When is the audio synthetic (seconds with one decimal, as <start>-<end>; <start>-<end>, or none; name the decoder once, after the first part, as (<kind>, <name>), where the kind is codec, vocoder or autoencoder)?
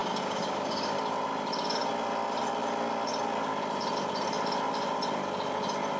0.0-1.0 (codec, DAC)